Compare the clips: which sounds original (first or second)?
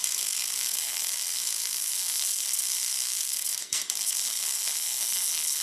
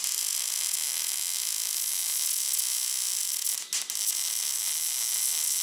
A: second